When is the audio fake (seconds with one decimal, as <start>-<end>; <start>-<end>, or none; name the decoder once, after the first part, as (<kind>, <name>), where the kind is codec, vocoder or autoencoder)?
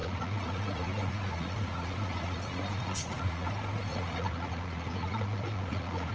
0.0-3.5 (vocoder, Vocos); 3.9-6.1